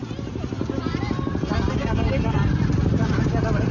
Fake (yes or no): no